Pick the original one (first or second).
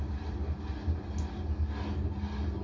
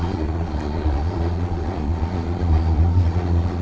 first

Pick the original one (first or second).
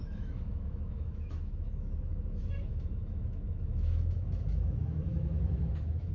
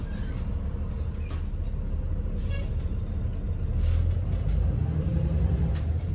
second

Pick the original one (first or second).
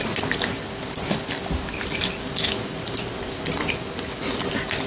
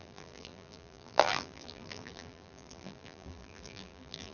first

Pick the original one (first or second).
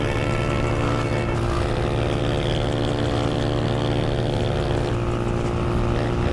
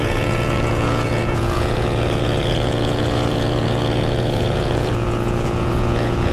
first